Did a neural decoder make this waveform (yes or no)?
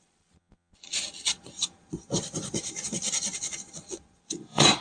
yes